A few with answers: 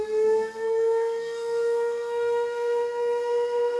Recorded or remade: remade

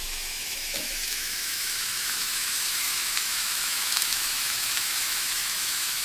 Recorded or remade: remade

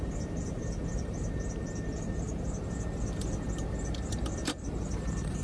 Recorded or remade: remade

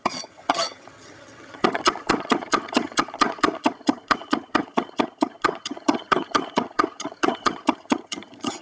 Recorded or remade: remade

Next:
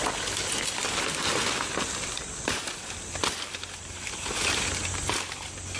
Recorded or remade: recorded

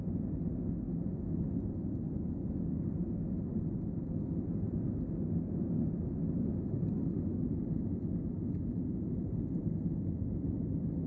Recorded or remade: recorded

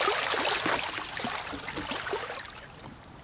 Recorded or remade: recorded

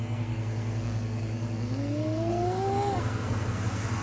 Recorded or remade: remade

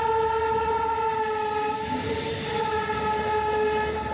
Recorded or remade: recorded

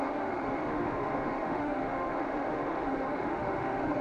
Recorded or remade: remade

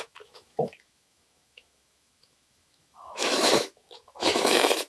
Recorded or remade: remade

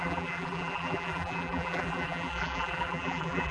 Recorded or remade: remade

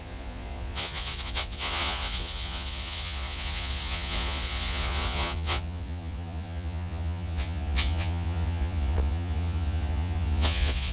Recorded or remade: remade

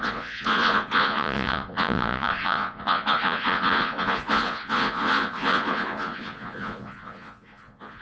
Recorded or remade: remade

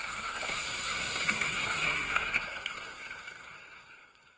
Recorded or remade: remade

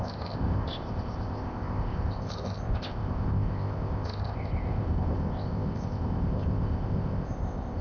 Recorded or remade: remade